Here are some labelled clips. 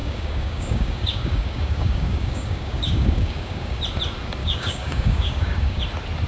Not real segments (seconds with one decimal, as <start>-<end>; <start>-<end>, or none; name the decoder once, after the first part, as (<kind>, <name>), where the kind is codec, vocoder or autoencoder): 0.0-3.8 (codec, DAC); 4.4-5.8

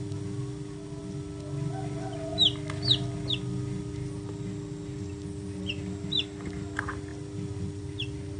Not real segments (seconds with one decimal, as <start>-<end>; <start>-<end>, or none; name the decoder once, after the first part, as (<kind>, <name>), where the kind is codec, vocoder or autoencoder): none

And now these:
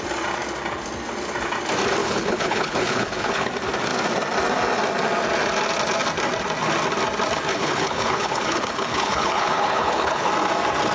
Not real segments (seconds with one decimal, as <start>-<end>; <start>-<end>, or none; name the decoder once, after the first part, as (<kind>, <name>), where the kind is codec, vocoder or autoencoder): 2.0-3.5 (codec, HILCodec); 7.5-10.3

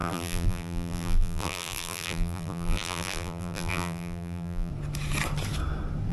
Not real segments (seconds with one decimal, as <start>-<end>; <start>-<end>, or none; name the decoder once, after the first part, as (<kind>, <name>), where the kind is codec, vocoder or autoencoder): 0.0-4.7 (vocoder, BigVGAN v2)

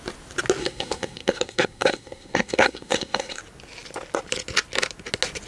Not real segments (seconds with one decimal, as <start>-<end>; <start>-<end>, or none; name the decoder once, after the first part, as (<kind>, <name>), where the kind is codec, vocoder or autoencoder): 0.6-3.4 (codec, SNAC)